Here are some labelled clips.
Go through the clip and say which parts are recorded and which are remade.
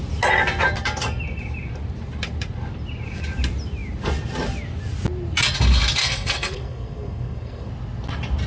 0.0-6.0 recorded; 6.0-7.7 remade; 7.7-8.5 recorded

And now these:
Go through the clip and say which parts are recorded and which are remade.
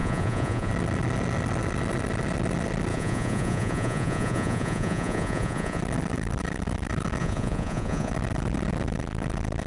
0.0-0.7 remade; 0.7-2.9 recorded; 2.9-5.8 remade; 5.8-7.2 recorded; 7.2-8.1 remade; 8.1-9.7 recorded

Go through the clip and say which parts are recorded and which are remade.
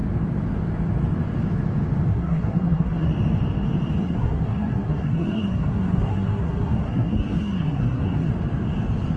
0.0-2.1 recorded; 2.1-3.1 remade; 3.1-4.0 recorded; 4.0-8.3 remade; 8.3-9.2 recorded